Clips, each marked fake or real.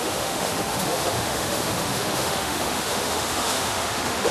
fake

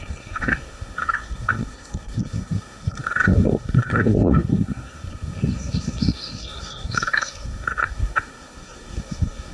fake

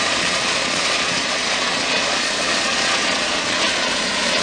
fake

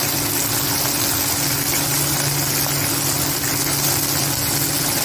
real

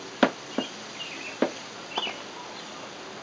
real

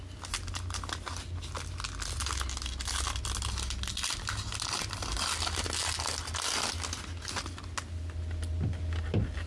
real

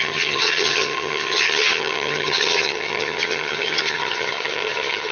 fake